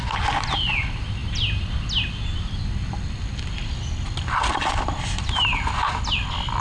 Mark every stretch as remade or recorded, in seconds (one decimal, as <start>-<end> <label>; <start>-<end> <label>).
0.0-6.6 recorded